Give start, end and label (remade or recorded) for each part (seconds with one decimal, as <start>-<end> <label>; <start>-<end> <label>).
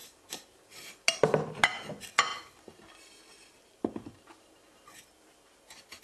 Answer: 0.0-6.0 recorded